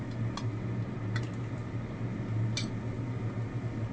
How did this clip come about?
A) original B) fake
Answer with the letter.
A